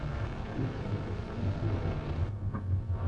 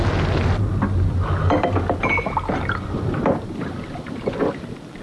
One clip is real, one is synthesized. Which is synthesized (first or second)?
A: first